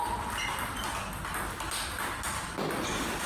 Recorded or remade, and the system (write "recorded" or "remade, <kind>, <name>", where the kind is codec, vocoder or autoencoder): recorded